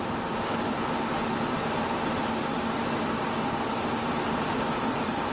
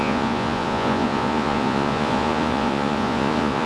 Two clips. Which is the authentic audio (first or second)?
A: first